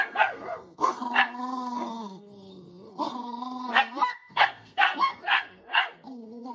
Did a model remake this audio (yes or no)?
yes